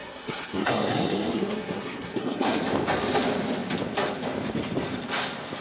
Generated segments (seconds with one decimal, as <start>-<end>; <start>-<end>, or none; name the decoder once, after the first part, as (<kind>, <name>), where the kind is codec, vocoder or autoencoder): 0.0-2.6 (codec, SNAC)